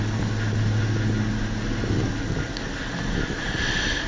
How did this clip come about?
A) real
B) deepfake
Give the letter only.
A